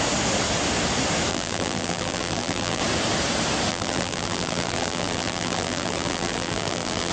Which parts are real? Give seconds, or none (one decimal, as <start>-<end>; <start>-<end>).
0.0-1.3; 2.8-3.7

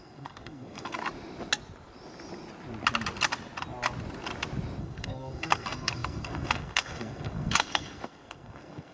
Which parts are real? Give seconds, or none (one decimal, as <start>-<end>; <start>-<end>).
1.0-4.8

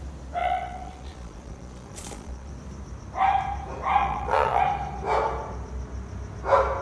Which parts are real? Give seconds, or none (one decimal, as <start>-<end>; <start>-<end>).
0.0-0.4; 2.5-4.0; 4.6-6.8

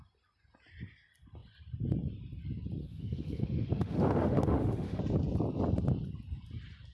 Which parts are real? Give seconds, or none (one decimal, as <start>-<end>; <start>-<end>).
0.0-2.8; 5.0-6.9

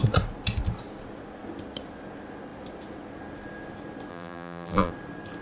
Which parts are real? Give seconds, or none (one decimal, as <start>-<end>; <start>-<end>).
0.0-4.1; 4.9-5.4

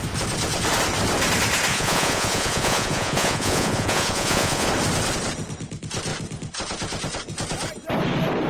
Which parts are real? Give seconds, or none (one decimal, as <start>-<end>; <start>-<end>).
0.0-1.7; 4.7-8.5

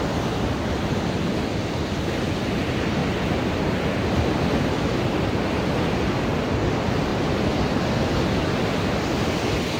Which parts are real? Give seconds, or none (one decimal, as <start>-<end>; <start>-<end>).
0.0-9.8